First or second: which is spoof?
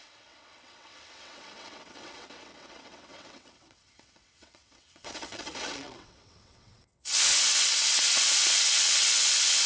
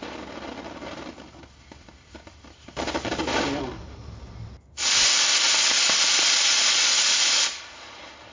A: first